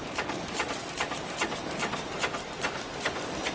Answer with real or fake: fake